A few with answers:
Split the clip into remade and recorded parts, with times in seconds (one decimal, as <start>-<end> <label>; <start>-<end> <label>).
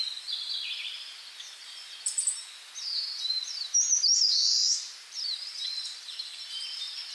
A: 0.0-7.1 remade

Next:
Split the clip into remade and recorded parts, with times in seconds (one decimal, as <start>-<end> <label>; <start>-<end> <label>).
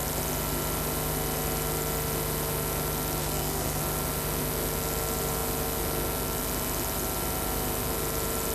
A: 0.0-3.2 recorded; 3.2-3.8 remade; 3.8-8.5 recorded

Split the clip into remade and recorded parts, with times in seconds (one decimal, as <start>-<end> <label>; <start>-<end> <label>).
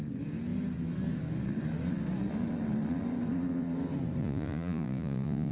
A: 0.0-4.2 recorded; 4.2-5.5 remade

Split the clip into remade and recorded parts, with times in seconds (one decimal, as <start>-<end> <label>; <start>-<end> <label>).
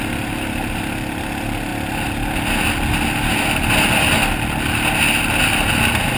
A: 0.0-6.2 recorded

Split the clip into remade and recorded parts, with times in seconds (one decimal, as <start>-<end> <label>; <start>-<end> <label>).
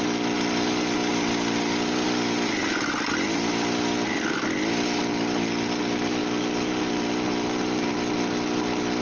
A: 0.0-9.0 recorded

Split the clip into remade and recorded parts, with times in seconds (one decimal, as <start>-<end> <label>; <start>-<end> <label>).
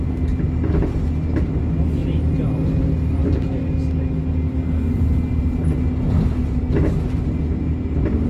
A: 0.0-8.3 recorded